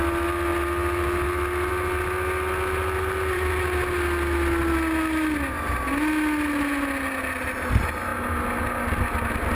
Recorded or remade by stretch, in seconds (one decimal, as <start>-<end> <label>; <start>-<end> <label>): 0.0-9.5 recorded